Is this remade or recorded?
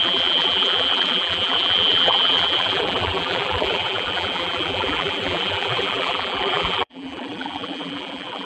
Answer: remade